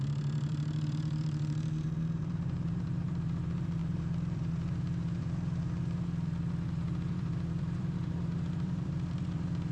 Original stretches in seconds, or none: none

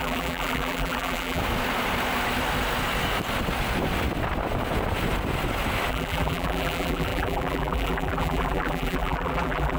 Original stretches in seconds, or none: 1.4-5.9

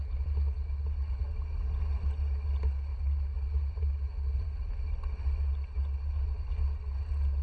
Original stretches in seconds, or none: 0.0-7.4

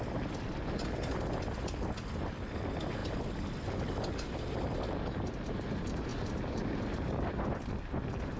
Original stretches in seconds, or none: 0.0-8.4

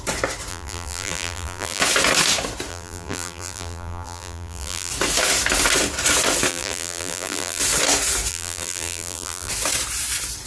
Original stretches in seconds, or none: 0.0-0.5; 1.8-2.7; 4.9-6.5; 7.6-8.3; 9.5-10.5

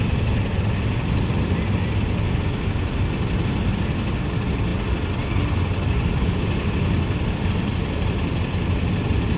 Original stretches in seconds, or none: 0.0-9.4

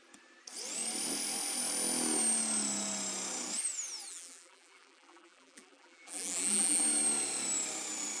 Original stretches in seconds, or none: 0.0-4.1; 6.8-8.2

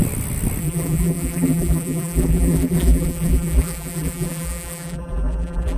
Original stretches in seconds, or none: 0.0-0.6